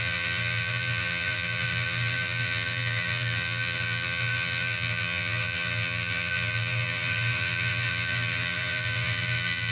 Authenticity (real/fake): fake